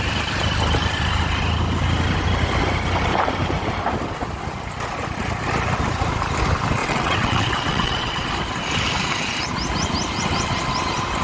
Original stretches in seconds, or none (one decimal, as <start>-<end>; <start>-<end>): 0.0-6.8; 8.3-11.2